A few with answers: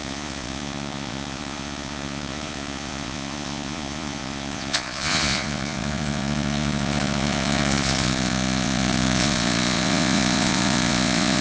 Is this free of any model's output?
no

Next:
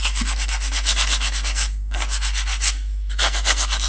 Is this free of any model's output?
no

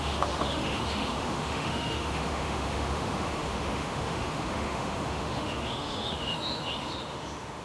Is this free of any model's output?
no